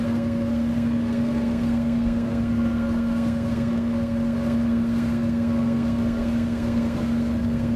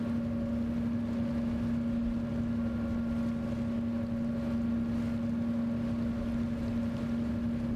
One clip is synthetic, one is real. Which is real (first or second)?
second